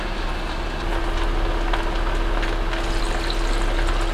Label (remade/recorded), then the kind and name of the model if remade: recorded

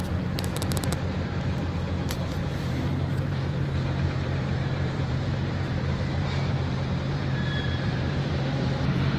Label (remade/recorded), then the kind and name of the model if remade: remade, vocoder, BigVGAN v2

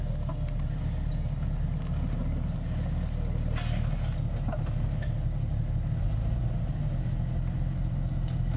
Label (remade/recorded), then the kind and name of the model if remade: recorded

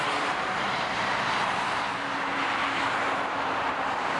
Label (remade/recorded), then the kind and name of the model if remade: remade, vocoder, BigVGAN v2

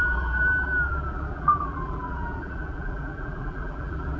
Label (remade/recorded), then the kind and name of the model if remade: remade, vocoder, BigVGAN v2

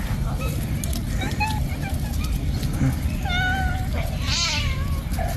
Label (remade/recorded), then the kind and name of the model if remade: recorded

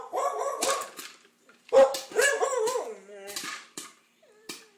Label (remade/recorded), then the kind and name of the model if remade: remade, vocoder, BigVGAN v2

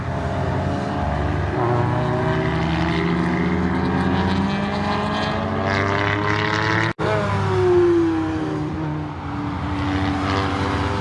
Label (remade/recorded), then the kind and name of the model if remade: recorded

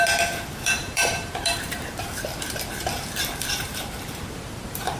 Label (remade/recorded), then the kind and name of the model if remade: remade, vocoder, BigVGAN v2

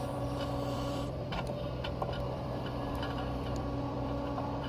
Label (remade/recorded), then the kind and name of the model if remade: remade, vocoder, BigVGAN v2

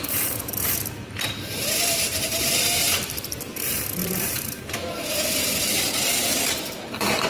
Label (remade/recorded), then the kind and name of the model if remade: remade, vocoder, BigVGAN v2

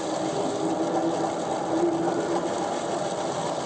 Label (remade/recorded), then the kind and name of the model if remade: recorded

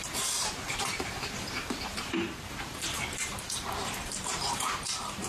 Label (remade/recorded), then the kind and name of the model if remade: remade, vocoder, BigVGAN v2